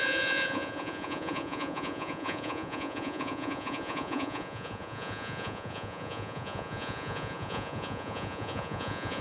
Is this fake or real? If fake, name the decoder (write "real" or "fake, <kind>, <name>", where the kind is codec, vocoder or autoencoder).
fake, vocoder, Vocos